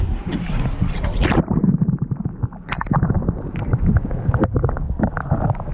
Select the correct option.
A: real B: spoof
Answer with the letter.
A